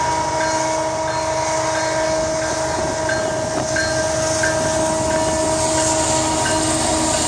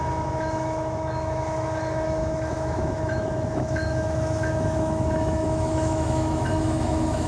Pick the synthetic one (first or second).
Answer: second